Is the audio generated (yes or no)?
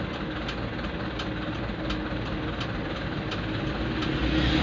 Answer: no